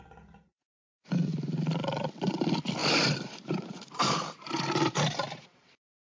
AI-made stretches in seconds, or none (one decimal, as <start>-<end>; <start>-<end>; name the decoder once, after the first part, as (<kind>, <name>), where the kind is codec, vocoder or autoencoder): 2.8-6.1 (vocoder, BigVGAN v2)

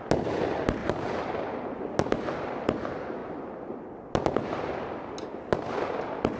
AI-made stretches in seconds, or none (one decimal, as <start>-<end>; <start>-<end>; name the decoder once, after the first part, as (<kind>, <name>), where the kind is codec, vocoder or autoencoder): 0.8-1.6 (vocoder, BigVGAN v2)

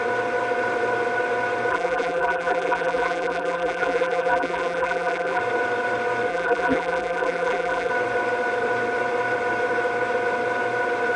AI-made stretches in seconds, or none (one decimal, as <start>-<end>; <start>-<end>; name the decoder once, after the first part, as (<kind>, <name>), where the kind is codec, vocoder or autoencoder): 1.7-5.4 (vocoder, BigVGAN v2); 6.3-7.9

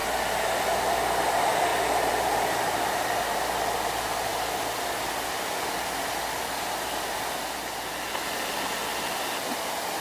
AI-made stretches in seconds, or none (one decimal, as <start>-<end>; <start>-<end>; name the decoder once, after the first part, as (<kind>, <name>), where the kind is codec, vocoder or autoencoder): 0.0-0.9 (vocoder, BigVGAN v2); 1.7-3.2